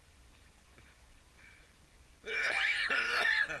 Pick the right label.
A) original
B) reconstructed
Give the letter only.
B